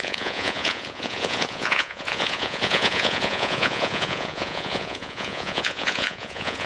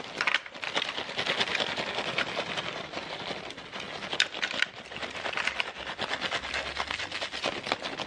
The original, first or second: second